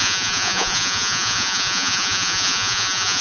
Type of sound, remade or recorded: remade